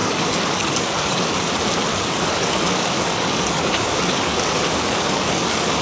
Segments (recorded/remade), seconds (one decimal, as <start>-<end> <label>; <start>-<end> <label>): 0.0-1.5 remade; 1.5-1.9 recorded; 1.9-5.8 remade